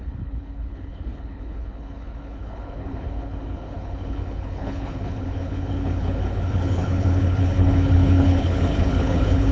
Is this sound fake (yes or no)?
yes